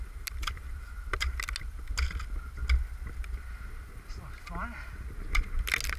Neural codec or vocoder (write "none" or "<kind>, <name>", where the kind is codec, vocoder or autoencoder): none